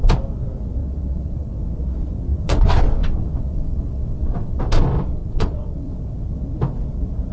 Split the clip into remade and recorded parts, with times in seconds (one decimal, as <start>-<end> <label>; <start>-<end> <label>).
0.0-0.8 recorded; 0.8-1.6 remade; 1.6-2.3 recorded; 2.3-4.6 remade; 4.6-5.2 recorded; 5.2-5.9 remade; 5.9-7.3 recorded